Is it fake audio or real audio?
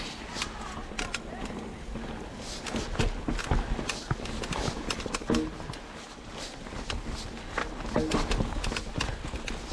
real